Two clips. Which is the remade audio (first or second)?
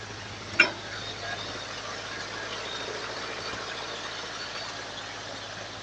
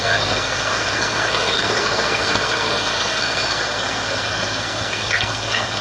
second